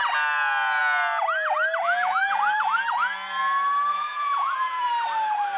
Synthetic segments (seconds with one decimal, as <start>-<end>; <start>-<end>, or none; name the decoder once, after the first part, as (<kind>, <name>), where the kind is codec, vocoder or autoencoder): 3.9-4.9 (vocoder, Vocos)